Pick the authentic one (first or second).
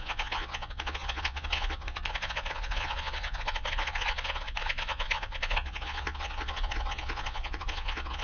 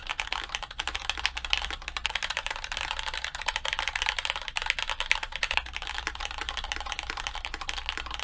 second